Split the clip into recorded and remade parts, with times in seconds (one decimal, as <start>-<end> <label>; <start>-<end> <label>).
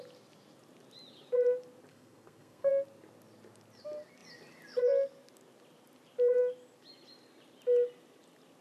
0.0-1.9 recorded; 1.9-2.7 remade; 2.7-8.6 recorded